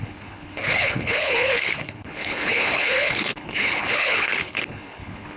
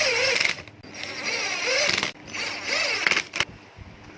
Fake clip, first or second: first